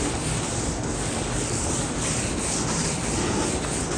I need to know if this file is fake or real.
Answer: real